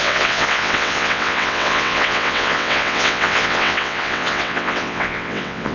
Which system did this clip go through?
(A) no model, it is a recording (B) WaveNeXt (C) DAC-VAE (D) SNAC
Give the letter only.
B